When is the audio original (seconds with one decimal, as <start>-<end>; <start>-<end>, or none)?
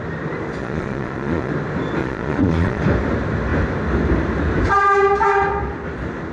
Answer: 0.0-0.6; 1.5-2.0; 2.8-6.3